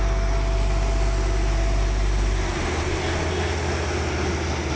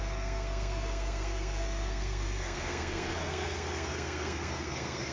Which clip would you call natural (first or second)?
first